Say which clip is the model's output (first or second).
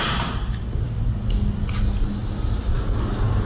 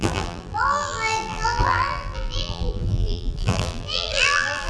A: second